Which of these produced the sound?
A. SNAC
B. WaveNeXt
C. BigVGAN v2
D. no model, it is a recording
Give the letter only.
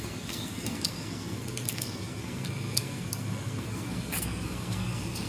A